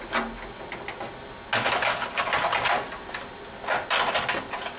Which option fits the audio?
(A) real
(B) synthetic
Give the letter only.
A